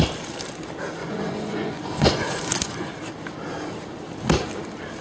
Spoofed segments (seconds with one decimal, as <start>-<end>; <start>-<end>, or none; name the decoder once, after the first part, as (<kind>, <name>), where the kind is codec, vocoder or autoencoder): 1.0-2.9 (vocoder, Vocos)